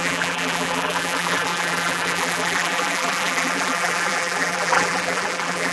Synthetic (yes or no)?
yes